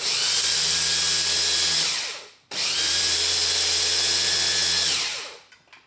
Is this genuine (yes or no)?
yes